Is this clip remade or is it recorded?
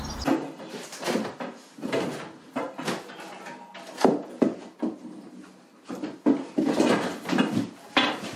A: recorded